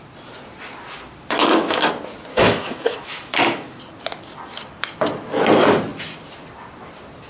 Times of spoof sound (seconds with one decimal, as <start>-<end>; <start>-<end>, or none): 1.4-1.9; 2.3-3.8